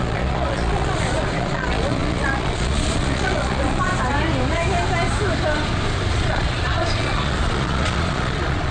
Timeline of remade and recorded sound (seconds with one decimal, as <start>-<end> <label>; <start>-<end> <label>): 0.0-3.9 remade; 3.9-6.1 recorded; 6.1-8.7 remade